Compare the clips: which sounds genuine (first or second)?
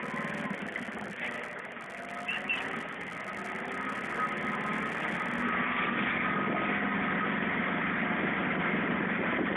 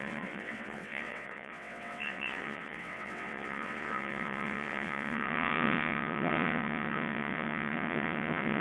first